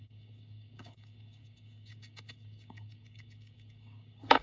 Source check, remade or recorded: remade